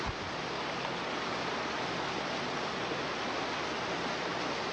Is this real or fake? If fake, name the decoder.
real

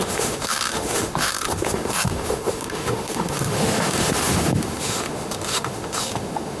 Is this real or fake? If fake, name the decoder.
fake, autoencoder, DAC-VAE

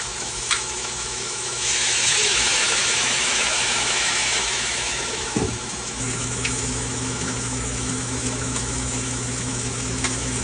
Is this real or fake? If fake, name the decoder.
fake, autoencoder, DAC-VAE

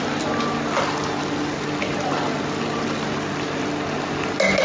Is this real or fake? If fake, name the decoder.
real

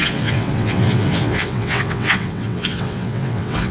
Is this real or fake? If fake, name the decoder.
fake, vocoder, WaveNeXt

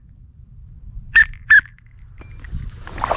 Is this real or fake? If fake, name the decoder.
real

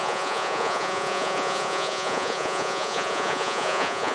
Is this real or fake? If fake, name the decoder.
fake, vocoder, Vocos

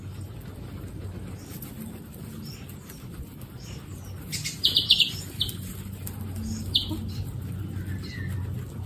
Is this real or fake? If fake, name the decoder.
real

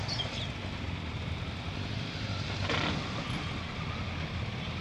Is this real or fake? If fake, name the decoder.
real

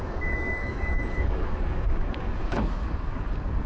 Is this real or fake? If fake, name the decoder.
fake, codec, DAC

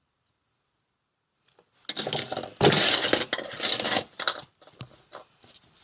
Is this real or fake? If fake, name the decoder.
real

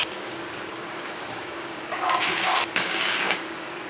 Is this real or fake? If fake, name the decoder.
fake, codec, DAC